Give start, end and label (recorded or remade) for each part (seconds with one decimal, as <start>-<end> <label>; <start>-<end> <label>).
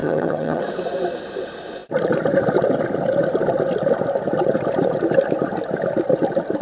0.0-0.6 remade; 0.6-6.6 recorded